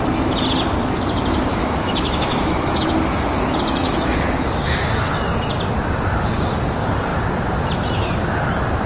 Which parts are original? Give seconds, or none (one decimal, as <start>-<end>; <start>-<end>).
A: 0.0-1.5; 2.9-3.8; 4.9-8.9